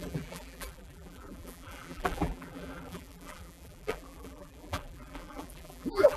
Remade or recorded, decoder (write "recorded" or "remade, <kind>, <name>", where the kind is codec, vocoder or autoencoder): remade, vocoder, BigVGAN v2